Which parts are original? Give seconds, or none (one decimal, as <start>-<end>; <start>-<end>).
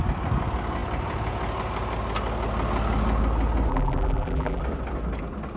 0.0-3.7; 4.6-5.6